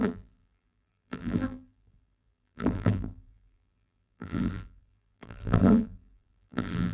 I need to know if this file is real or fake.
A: fake